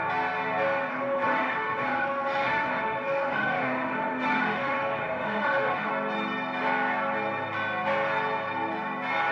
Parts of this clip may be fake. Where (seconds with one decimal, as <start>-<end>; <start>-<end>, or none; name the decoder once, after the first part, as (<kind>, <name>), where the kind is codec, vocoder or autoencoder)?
0.9-5.9 (autoencoder, DAC-VAE)